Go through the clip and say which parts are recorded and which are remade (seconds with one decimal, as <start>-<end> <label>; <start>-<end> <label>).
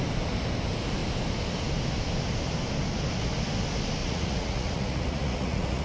0.0-4.0 recorded; 4.0-5.8 remade